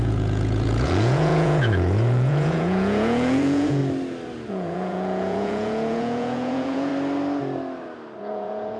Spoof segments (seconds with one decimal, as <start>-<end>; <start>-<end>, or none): 0.0-3.8; 4.5-6.9; 8.2-8.8

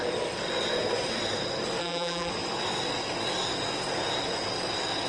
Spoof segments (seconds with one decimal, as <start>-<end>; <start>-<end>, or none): 1.8-2.3

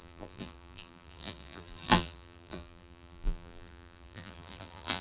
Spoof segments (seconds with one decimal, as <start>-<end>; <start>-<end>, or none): 0.0-5.0

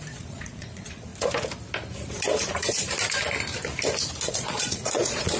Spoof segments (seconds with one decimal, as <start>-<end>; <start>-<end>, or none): 0.0-1.1; 4.3-5.4

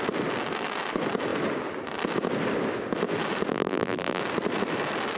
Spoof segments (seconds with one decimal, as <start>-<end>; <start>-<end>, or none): 3.5-4.2

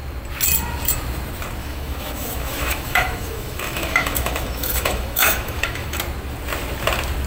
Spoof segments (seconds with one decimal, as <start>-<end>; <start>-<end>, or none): 1.6-6.0

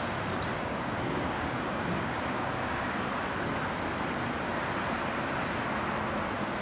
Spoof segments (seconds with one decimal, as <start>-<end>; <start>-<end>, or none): 0.5-3.2

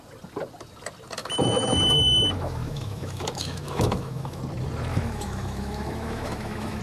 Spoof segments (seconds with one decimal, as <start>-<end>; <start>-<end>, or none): 1.2-4.4; 4.9-6.8